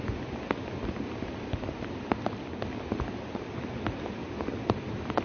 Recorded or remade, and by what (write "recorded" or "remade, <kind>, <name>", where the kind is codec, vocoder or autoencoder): recorded